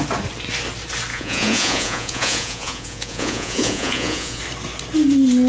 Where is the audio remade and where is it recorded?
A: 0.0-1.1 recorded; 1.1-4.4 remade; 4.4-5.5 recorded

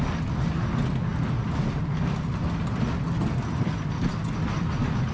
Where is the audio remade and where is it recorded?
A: 0.0-5.1 recorded

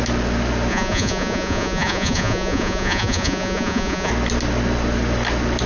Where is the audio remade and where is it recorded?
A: 0.0-0.7 recorded; 0.7-4.1 remade; 4.1-5.7 recorded

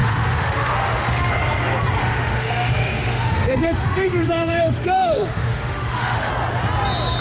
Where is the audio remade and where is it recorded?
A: 0.0-1.3 remade; 1.3-2.0 recorded; 2.0-6.3 remade; 6.3-7.2 recorded

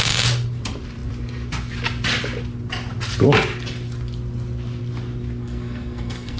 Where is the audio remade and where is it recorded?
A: 0.0-5.4 recorded; 5.4-6.4 remade

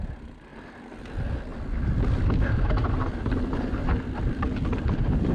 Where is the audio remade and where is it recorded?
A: 0.0-1.5 recorded; 1.5-3.3 remade; 3.3-3.8 recorded; 3.8-5.3 remade

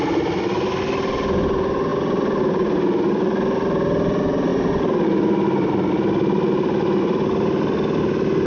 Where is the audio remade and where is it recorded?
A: 0.0-8.5 recorded